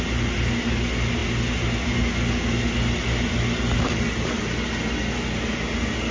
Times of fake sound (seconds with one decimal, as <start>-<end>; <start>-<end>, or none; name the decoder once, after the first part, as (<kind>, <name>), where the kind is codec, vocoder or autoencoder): none